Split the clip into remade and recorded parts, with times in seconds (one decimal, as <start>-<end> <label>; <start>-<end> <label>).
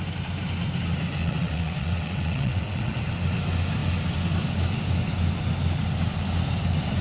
0.0-1.2 recorded; 1.2-3.0 remade; 3.0-7.0 recorded